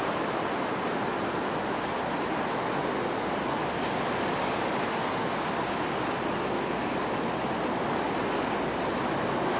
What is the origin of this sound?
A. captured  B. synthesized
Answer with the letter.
A